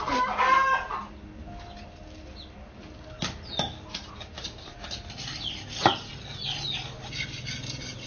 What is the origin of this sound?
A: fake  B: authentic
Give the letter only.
B